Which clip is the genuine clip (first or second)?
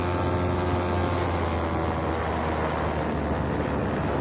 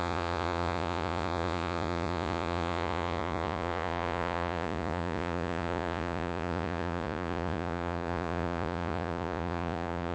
first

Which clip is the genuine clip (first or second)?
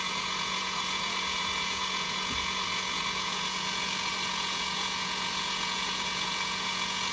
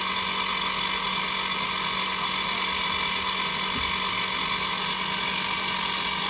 second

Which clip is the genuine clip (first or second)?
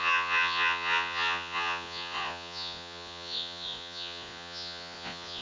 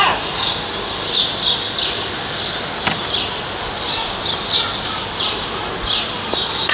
second